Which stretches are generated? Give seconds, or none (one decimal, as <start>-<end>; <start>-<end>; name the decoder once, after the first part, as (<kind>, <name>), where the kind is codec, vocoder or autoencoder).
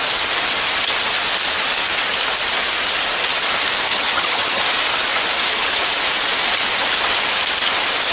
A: 3.9-4.6 (vocoder, HiFi-GAN)